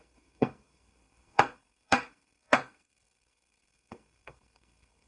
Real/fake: fake